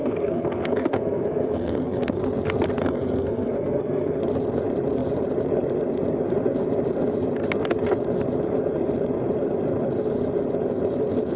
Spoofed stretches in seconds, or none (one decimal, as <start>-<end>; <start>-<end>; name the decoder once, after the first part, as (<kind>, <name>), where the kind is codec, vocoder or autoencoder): 0.0-2.2 (codec, SNAC); 2.8-4.2